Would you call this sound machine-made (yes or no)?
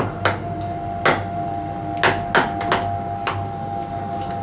no